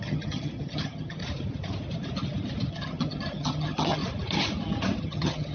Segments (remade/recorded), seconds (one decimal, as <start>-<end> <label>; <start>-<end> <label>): 0.0-1.2 remade; 1.2-2.7 recorded; 2.7-4.0 remade; 4.0-5.0 recorded; 5.0-5.5 remade